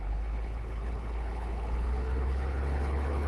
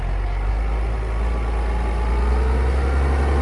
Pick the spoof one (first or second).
first